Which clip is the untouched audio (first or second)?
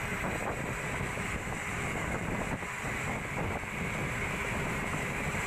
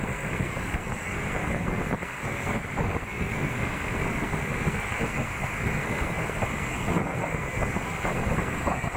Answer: first